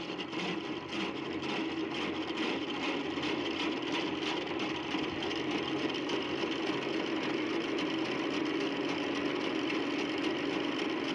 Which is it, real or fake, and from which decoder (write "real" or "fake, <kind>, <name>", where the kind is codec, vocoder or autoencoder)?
real